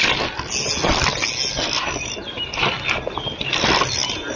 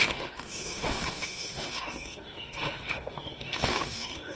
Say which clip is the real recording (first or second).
first